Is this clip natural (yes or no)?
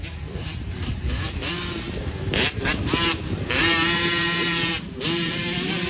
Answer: no